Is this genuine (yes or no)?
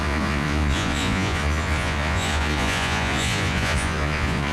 no